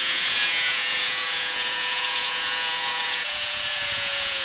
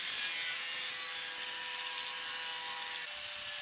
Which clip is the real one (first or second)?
second